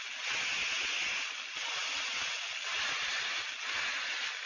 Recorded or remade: recorded